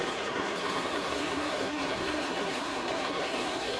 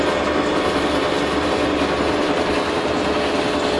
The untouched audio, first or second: second